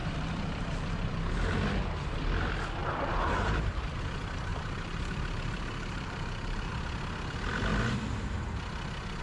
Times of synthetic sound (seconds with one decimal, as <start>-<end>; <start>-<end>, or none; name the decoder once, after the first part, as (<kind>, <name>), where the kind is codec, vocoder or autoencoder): 0.0-1.3 (vocoder, BigVGAN v2); 2.8-4.0; 4.5-6.7